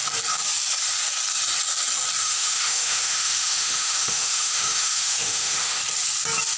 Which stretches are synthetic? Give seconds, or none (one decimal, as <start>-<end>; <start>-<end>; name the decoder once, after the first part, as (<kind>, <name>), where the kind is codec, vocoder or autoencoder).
2.2-5.8 (autoencoder, DAC-VAE)